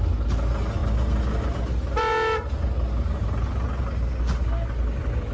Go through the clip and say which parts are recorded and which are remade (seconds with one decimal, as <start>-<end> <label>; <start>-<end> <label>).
0.0-5.3 recorded